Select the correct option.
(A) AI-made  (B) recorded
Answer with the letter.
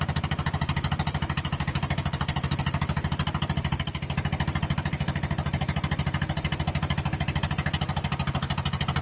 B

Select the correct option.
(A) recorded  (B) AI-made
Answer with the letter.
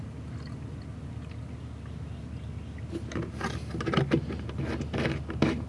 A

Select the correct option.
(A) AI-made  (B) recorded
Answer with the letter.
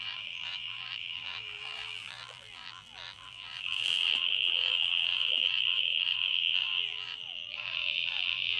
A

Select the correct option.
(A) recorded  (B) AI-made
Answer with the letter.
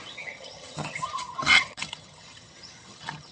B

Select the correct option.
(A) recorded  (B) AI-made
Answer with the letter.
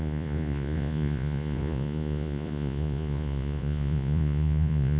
B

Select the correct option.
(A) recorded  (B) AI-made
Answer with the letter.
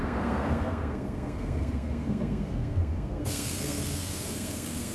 B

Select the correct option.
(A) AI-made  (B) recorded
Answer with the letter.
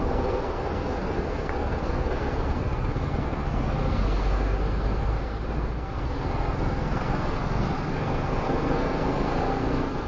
A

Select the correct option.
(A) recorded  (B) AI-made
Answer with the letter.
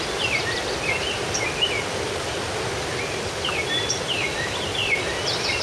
B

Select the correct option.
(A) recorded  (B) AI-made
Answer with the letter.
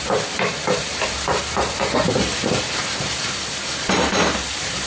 B